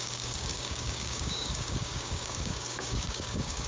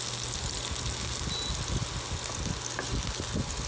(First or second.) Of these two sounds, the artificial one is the first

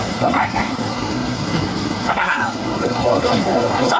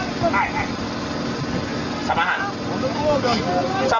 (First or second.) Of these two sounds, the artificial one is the first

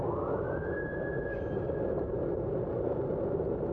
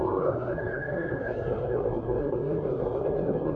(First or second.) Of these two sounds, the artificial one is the second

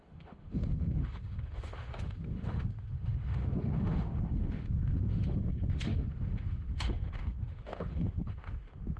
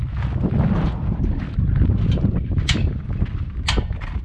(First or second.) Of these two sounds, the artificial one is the first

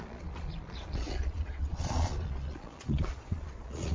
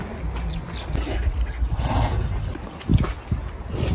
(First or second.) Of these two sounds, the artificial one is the first